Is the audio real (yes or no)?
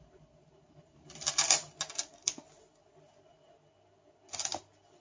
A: yes